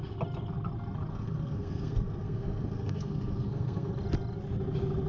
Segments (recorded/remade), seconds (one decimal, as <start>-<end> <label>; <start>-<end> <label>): 0.0-1.1 recorded; 1.1-3.9 remade; 3.9-5.1 recorded